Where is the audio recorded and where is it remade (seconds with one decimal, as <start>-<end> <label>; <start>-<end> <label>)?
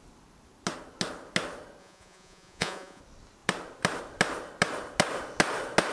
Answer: 0.0-1.8 recorded; 1.8-3.0 remade; 3.0-5.9 recorded